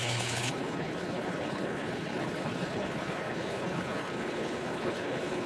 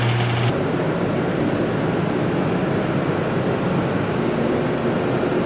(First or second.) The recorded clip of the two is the second